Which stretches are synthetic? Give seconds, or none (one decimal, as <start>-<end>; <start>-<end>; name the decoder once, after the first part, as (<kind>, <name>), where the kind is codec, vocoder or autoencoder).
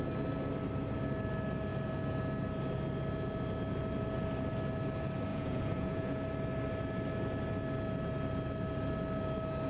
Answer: 5.3-6.2 (vocoder, Vocos)